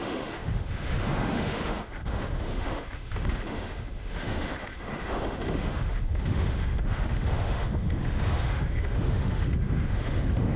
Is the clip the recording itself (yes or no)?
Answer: no